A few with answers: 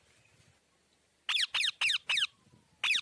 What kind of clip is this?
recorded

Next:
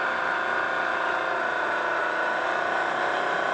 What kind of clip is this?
remade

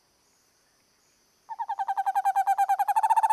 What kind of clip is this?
recorded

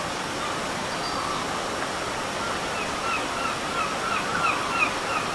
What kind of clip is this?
recorded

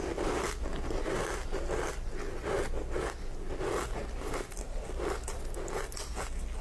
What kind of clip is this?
recorded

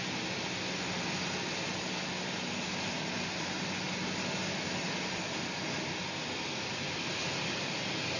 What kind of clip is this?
recorded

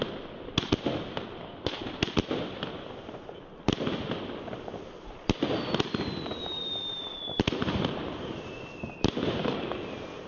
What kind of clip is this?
recorded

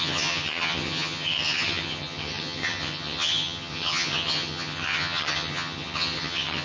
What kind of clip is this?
remade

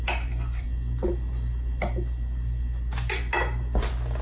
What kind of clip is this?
recorded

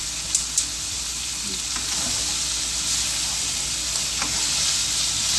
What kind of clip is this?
recorded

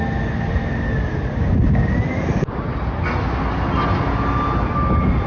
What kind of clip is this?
recorded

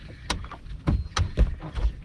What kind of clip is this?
recorded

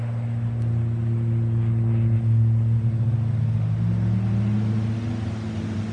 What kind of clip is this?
recorded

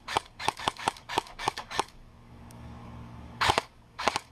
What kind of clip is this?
remade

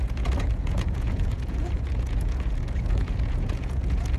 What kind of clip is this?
remade